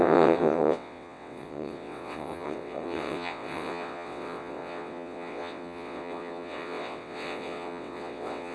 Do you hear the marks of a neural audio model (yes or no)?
yes